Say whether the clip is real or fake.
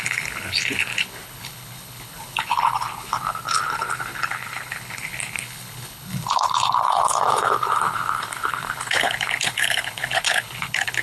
fake